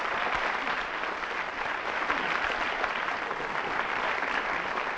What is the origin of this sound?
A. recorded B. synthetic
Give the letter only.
A